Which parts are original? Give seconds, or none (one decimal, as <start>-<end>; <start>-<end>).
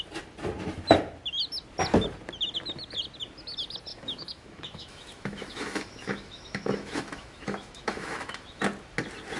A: 0.0-3.9; 8.6-9.4